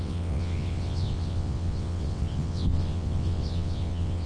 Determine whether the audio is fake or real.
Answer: fake